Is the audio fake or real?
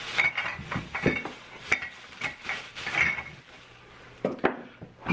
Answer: real